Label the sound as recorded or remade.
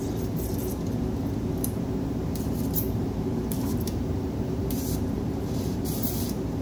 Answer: remade